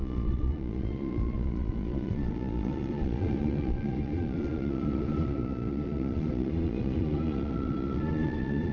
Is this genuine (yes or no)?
no